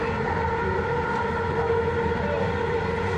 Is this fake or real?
real